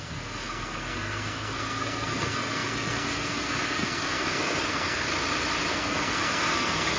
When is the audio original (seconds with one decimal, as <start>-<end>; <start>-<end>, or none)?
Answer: 5.1-5.7